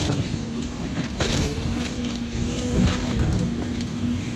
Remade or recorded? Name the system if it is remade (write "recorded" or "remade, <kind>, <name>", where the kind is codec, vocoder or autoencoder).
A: remade, codec, DAC